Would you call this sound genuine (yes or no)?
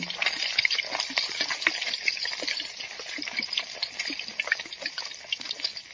yes